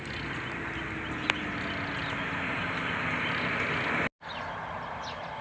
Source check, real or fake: real